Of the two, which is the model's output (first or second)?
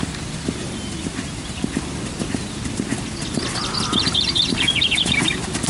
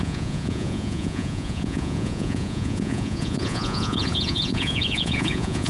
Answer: second